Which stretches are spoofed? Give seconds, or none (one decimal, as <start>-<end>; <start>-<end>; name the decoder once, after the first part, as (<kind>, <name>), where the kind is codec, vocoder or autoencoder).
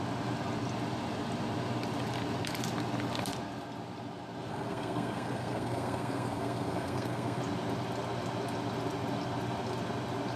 4.5-7.4 (codec, SNAC)